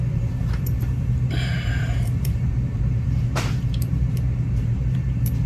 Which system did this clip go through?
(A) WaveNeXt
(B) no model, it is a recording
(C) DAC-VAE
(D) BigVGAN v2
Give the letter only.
D